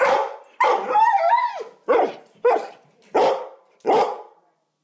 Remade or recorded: recorded